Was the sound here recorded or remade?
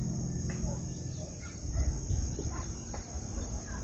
recorded